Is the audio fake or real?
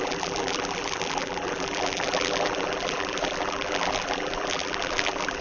fake